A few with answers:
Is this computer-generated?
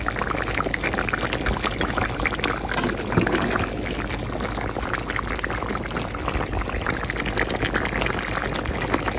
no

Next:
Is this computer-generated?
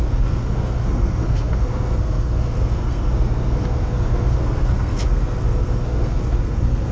yes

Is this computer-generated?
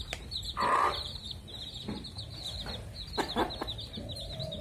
yes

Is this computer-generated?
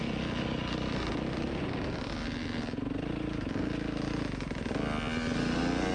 no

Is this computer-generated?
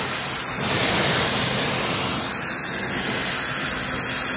no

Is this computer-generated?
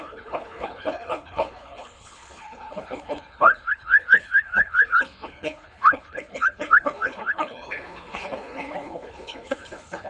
yes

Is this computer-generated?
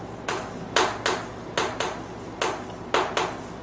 no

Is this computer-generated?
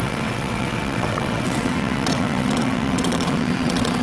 yes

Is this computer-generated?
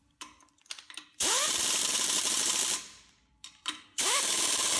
yes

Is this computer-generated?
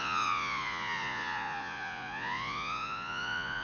yes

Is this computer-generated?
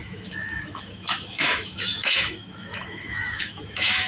yes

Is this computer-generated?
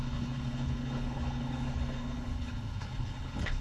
yes